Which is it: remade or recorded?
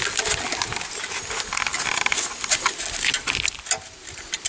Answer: recorded